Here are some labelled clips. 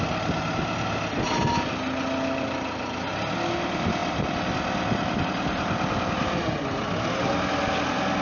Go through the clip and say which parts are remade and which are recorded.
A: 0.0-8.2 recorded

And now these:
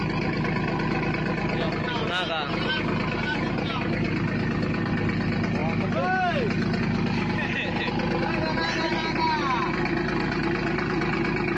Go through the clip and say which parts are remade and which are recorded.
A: 0.0-11.6 recorded

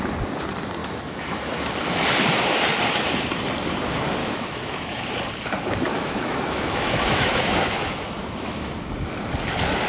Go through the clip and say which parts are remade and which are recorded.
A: 0.0-0.8 recorded; 0.8-1.7 remade; 1.7-4.2 recorded; 4.2-5.0 remade; 5.0-5.9 recorded; 5.9-8.7 remade; 8.7-9.9 recorded

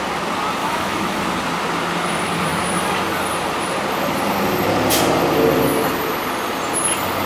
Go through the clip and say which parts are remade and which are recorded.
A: 0.0-0.6 recorded; 0.6-1.2 remade; 1.2-7.3 recorded

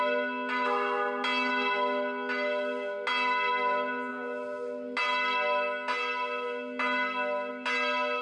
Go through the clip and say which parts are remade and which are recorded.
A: 0.0-8.2 recorded